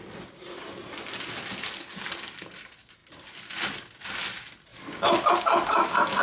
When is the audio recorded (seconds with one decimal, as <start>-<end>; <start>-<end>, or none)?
0.0-6.2